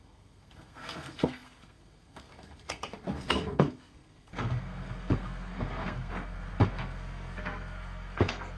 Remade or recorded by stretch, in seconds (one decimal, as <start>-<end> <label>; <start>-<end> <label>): 0.0-8.6 remade